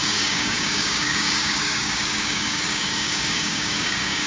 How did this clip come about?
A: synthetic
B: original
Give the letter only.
A